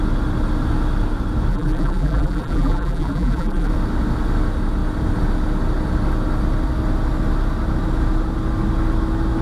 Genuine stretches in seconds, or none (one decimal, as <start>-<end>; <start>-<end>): 0.0-1.5; 3.7-9.4